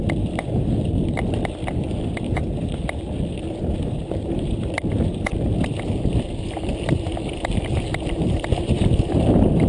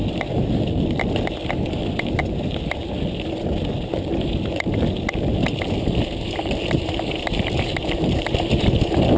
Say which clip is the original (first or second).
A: second